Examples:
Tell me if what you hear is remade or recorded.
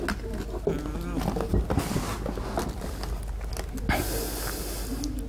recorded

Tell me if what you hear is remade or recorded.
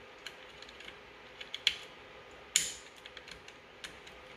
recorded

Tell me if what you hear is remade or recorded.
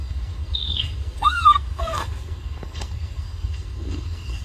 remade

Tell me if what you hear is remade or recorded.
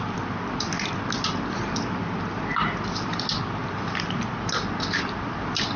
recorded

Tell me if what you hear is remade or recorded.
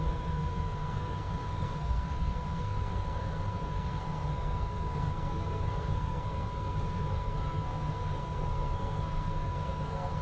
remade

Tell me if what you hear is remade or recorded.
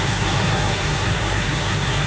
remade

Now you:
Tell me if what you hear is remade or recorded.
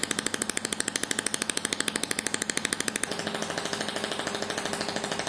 recorded